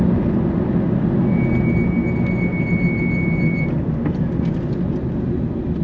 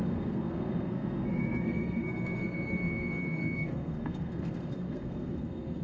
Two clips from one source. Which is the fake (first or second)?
second